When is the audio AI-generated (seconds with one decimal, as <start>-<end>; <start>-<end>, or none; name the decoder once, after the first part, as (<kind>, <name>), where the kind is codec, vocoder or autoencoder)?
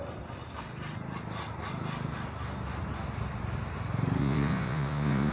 4.2-5.3 (vocoder, Vocos)